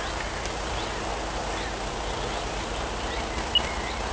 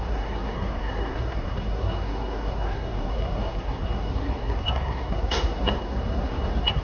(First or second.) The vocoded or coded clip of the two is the second